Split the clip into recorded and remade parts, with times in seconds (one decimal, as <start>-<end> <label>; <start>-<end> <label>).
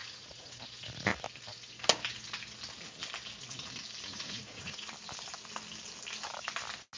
0.0-0.5 remade; 0.5-4.1 recorded; 4.1-4.9 remade; 4.9-7.0 recorded